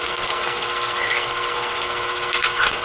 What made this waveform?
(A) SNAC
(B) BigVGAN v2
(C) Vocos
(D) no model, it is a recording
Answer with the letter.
A